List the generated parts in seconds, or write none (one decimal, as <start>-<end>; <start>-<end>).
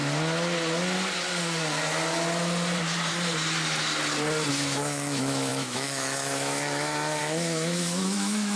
4.5-8.6